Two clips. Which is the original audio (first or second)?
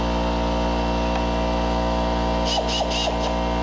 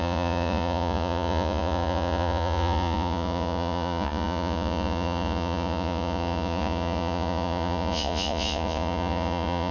first